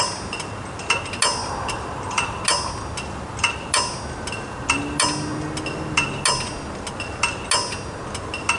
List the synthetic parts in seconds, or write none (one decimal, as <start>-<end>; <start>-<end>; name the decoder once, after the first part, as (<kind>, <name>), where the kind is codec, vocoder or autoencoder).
1.4-2.4 (vocoder, BigVGAN v2)